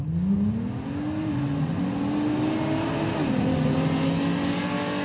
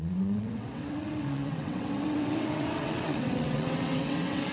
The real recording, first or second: first